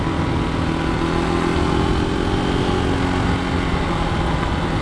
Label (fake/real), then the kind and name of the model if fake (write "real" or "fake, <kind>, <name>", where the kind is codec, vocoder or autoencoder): real